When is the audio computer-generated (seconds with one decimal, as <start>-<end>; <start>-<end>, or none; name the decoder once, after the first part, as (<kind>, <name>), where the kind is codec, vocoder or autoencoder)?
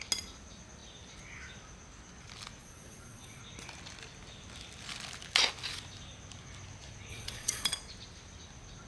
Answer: 2.6-3.4 (vocoder, Vocos); 7.1-7.7